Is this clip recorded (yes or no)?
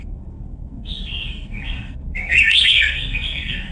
no